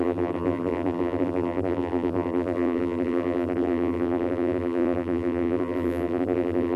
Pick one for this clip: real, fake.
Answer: fake